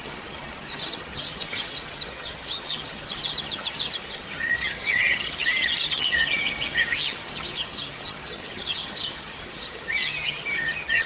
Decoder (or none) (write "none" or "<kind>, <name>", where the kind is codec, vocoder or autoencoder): vocoder, HiFi-GAN